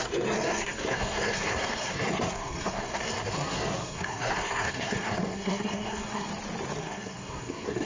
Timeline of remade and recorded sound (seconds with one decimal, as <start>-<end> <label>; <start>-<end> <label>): 0.0-6.3 remade; 6.3-6.8 recorded; 6.8-7.9 remade